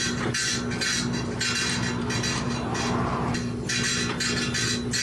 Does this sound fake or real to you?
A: real